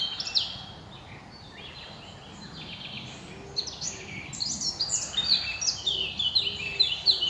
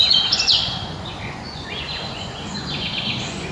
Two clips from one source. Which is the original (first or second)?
first